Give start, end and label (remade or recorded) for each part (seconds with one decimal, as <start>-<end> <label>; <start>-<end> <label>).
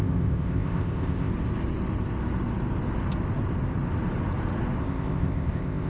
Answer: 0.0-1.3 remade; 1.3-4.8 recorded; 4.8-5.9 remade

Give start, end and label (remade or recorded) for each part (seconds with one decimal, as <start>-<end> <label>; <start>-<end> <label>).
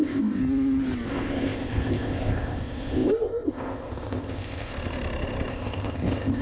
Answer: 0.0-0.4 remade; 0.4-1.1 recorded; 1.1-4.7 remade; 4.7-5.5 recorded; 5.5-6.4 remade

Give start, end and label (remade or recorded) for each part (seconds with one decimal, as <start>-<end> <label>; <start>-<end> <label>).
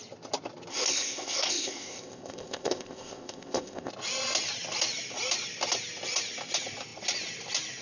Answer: 0.0-0.7 recorded; 0.7-3.9 remade; 3.9-7.8 recorded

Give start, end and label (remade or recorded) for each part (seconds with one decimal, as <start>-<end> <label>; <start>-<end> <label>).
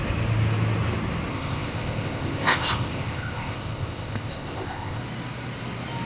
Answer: 0.0-1.3 recorded; 1.3-5.0 remade; 5.0-6.1 recorded